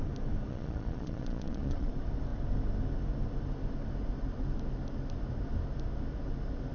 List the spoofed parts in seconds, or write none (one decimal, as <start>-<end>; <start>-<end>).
0.5-1.9